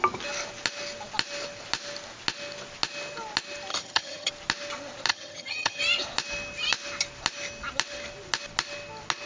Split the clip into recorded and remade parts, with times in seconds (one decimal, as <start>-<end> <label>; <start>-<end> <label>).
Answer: 0.0-3.7 recorded; 3.7-4.3 remade; 4.3-5.1 recorded; 5.1-5.8 remade; 5.8-9.3 recorded